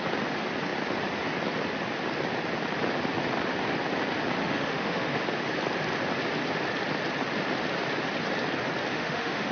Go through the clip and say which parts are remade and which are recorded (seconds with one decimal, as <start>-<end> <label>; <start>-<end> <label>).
0.0-4.4 recorded; 4.4-5.2 remade; 5.2-8.9 recorded; 8.9-9.5 remade